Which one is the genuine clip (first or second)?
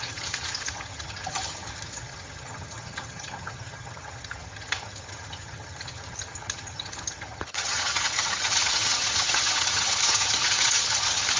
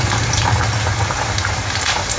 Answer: second